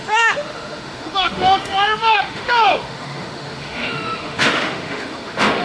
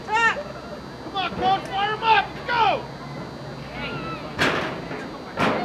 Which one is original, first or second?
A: second